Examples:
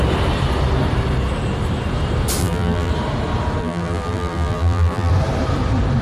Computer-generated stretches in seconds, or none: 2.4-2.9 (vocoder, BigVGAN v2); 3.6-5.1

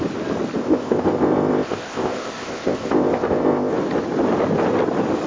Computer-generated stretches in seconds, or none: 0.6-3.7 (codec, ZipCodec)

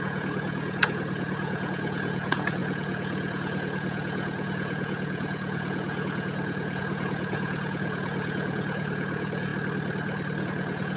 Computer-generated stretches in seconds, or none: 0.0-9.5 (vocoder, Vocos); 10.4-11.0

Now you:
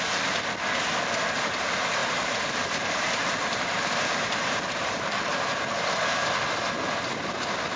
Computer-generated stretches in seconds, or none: 2.0-5.5 (vocoder, BigVGAN v2)